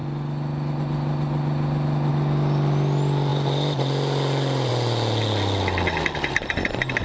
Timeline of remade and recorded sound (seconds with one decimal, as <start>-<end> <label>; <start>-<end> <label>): 0.0-7.0 recorded